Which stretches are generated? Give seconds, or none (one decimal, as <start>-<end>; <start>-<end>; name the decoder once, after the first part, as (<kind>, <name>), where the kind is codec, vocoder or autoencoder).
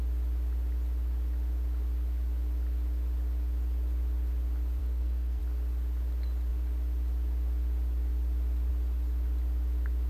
4.8-5.4 (codec, SNAC)